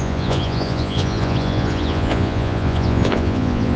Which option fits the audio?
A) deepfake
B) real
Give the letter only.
A